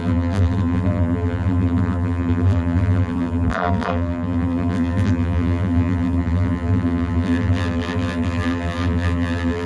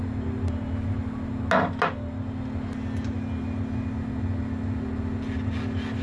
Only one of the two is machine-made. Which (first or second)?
first